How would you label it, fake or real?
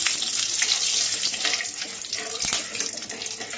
real